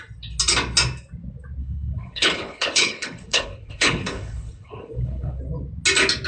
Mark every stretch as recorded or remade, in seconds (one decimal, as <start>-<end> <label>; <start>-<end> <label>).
0.0-1.6 recorded; 1.6-5.4 remade; 5.4-6.3 recorded